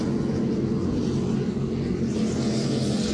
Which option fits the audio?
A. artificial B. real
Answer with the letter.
B